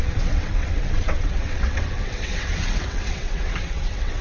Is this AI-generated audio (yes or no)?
yes